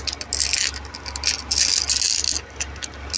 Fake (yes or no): no